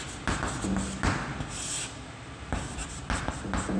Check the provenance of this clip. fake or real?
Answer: real